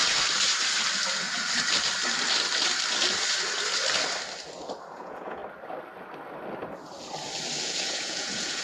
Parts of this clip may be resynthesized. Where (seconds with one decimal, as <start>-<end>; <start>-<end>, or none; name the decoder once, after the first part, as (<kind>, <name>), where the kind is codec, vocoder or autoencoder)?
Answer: 4.9-5.4 (vocoder, Vocos); 7.6-8.6